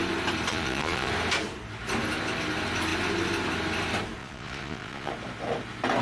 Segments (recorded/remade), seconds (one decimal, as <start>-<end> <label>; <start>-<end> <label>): 0.0-0.5 recorded; 0.5-1.1 remade; 1.1-4.2 recorded; 4.2-5.1 remade; 5.1-6.0 recorded